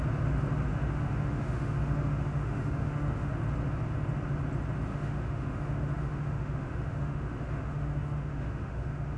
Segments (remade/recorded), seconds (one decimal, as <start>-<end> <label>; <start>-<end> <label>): 0.0-0.7 recorded; 0.7-3.3 remade; 3.3-4.9 recorded; 4.9-9.2 remade